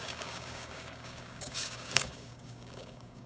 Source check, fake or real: fake